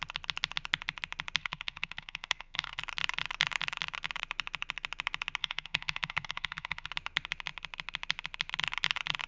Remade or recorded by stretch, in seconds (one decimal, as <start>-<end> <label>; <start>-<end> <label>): 0.0-1.4 recorded; 1.4-2.8 remade; 2.8-5.4 recorded; 5.4-6.9 remade; 6.9-9.3 recorded